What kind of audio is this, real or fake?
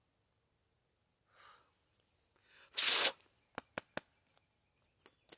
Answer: real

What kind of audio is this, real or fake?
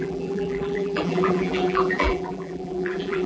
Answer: fake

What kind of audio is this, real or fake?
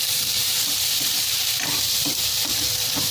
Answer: fake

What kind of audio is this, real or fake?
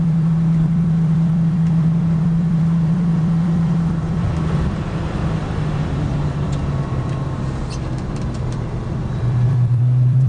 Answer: fake